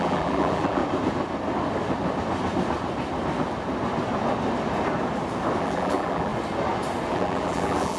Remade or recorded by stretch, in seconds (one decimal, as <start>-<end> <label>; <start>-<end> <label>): 0.0-0.8 remade; 0.8-5.6 recorded; 5.6-6.3 remade; 6.3-7.1 recorded; 7.1-8.0 remade